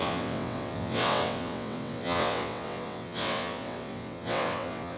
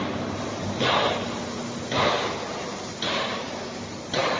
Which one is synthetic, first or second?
first